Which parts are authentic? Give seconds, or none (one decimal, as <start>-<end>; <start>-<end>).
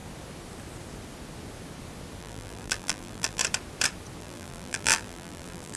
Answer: 0.0-2.2; 3.4-4.2